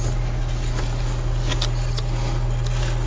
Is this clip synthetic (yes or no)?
no